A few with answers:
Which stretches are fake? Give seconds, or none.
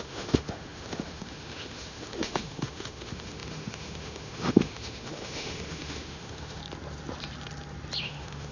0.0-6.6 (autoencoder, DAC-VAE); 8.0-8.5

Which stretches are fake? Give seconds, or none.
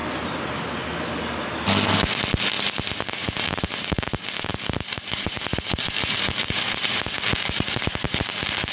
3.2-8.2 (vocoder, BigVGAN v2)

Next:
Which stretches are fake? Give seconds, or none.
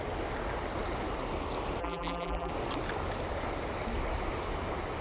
1.8-2.5 (vocoder, BigVGAN v2)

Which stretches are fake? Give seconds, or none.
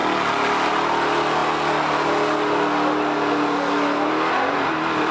none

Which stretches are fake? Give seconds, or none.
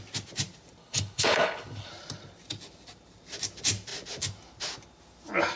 0.8-1.9 (codec, HILCodec)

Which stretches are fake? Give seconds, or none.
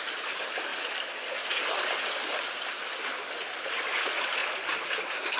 4.4-5.4 (vocoder, BigVGAN v2)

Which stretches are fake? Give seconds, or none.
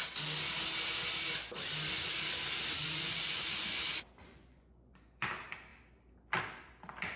2.8-3.8 (vocoder, Vocos); 4.3-5.3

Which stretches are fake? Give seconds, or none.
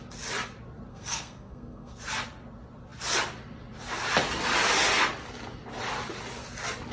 0.9-2.0 (codec, SNAC)